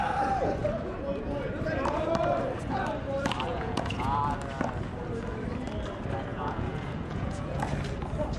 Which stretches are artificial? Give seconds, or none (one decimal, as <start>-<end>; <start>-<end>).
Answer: 3.5-4.2; 6.3-7.6